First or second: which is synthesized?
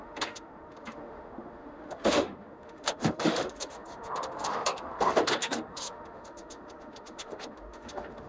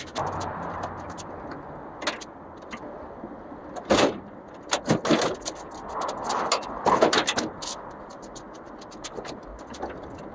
first